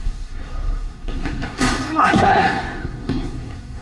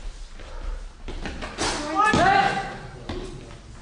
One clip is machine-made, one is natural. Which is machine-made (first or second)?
first